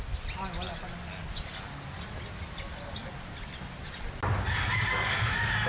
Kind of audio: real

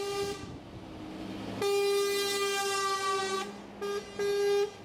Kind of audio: real